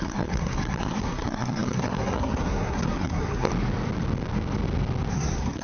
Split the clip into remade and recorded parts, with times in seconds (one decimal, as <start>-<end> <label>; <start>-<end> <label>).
0.0-3.5 remade; 3.5-5.1 recorded; 5.1-5.6 remade